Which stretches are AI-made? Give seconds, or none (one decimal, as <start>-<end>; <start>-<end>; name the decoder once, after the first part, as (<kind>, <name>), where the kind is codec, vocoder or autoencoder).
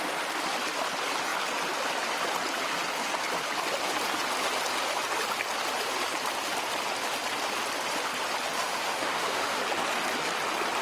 8.6-9.6 (autoencoder, DAC-VAE)